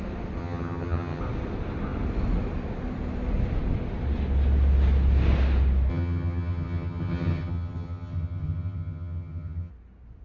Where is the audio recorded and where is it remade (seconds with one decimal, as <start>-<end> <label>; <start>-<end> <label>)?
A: 0.0-0.4 recorded; 0.4-1.2 remade; 1.2-5.9 recorded; 5.9-9.7 remade; 9.7-10.2 recorded